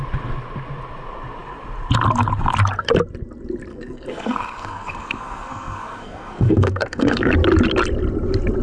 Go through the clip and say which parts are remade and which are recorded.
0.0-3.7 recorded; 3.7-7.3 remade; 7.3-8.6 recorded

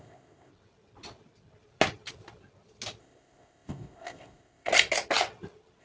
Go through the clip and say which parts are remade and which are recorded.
0.0-0.5 remade; 0.5-3.0 recorded; 3.0-4.7 remade; 4.7-5.8 recorded